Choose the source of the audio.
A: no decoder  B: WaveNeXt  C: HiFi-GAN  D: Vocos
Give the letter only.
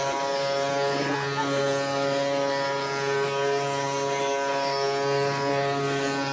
A